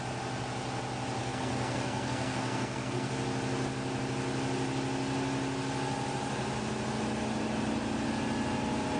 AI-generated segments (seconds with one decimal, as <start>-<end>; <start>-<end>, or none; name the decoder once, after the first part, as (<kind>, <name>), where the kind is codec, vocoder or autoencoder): 1.2-3.1 (codec, SNAC)